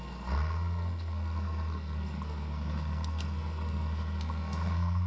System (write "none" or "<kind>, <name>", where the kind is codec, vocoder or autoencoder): codec, SNAC